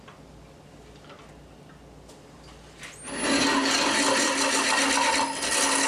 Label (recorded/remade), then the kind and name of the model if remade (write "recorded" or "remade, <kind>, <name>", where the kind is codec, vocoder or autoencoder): recorded